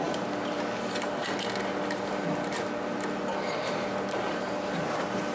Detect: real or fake real